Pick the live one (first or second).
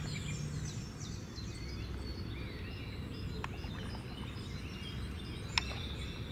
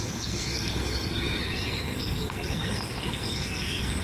first